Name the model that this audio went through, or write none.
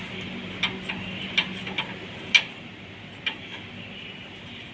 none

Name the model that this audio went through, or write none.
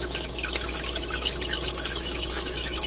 autoencoder, DAC-VAE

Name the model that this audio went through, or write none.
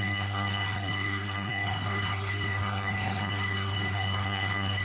codec, SNAC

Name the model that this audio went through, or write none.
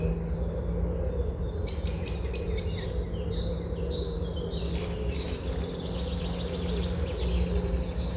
none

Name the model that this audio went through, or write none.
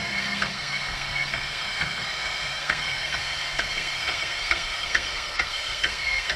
codec, SNAC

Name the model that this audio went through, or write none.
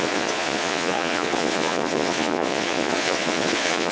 vocoder, Vocos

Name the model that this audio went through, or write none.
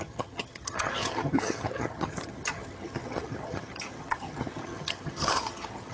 vocoder, HiFi-GAN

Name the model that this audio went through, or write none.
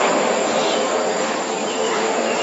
vocoder, BigVGAN v2